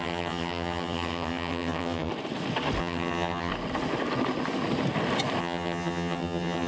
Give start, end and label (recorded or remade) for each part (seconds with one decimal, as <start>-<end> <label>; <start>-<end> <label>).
0.0-2.1 remade; 2.1-2.8 recorded; 2.8-3.5 remade; 3.5-5.4 recorded; 5.4-6.7 remade